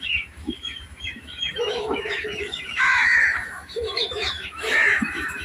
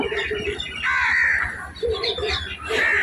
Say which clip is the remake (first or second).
first